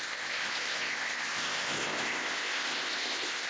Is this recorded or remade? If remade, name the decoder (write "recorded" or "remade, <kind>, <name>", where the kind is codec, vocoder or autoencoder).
remade, codec, ZipCodec